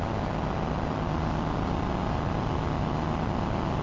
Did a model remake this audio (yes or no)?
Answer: no